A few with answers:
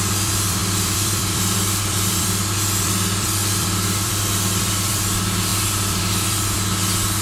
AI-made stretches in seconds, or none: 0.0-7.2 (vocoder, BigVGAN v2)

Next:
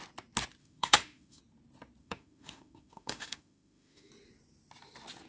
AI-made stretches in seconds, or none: 0.6-1.4 (autoencoder, DAC-VAE); 2.0-4.1